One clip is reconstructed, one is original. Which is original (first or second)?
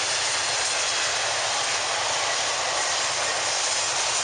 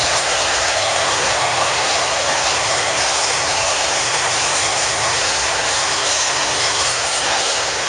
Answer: first